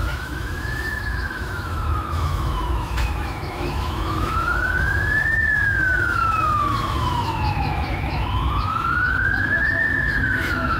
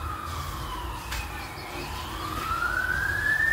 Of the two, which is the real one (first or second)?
second